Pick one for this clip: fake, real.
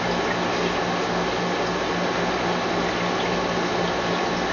real